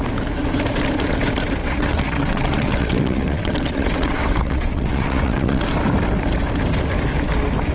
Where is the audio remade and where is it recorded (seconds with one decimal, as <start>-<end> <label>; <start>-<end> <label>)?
0.0-1.6 recorded; 1.6-5.6 remade; 5.6-7.7 recorded